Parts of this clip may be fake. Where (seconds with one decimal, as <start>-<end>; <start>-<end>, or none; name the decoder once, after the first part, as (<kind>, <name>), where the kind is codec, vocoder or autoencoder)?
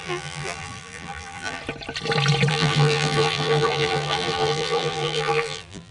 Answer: 0.0-1.6 (vocoder, BigVGAN v2); 2.5-5.9